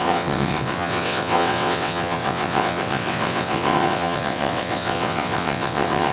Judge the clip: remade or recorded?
remade